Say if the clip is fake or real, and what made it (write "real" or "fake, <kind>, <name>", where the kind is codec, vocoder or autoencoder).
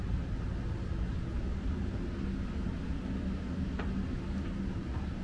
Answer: real